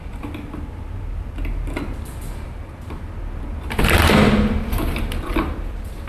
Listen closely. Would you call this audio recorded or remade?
recorded